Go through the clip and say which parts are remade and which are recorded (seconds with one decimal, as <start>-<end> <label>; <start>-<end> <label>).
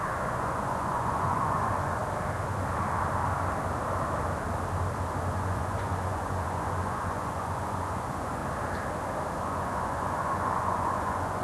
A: 0.0-2.0 remade; 2.0-5.3 recorded; 5.3-8.4 remade; 8.4-9.4 recorded; 9.4-11.4 remade